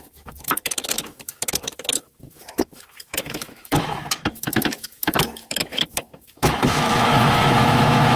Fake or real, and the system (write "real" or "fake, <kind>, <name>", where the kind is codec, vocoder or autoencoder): fake, autoencoder, DAC-VAE